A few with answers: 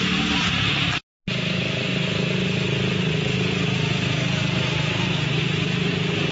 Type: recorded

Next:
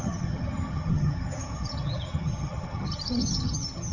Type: remade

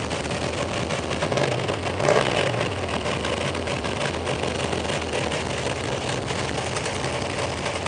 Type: remade